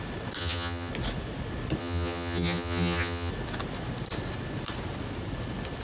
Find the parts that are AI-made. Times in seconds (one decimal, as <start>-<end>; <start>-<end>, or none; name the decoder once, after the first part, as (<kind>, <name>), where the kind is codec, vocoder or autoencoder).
0.4-0.9 (vocoder, HiFi-GAN); 1.8-3.3